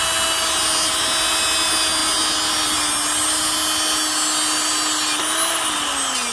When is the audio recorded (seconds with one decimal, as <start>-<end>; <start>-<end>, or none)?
0.0-6.3